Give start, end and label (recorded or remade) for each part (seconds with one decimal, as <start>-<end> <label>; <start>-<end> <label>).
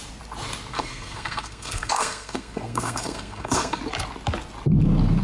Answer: 0.0-0.7 recorded; 0.7-3.8 remade; 3.8-5.2 recorded